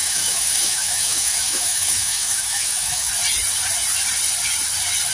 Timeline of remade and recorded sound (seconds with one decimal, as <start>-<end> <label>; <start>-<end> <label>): 0.0-3.1 remade; 3.1-5.1 recorded